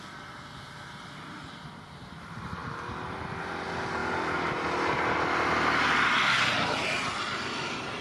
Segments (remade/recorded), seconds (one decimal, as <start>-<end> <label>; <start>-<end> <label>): 0.0-8.0 recorded